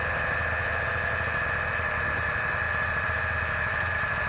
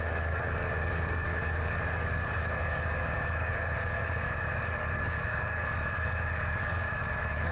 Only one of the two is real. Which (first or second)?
first